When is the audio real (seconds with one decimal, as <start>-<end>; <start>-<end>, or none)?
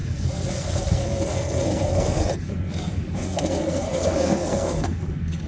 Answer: none